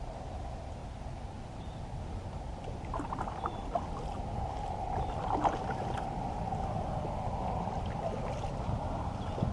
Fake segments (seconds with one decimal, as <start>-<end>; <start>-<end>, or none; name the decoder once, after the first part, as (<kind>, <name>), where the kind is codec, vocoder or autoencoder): none